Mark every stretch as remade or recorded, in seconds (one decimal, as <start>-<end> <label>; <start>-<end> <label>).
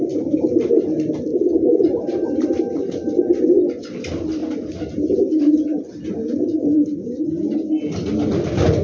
0.0-1.3 recorded; 1.3-3.6 remade; 3.6-8.8 recorded